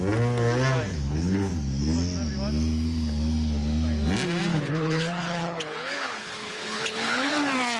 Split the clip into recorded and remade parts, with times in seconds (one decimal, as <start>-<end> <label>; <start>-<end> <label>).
0.0-0.9 recorded; 0.9-1.5 remade; 1.5-4.5 recorded; 4.5-7.3 remade; 7.3-7.8 recorded